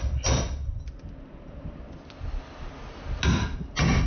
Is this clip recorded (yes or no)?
yes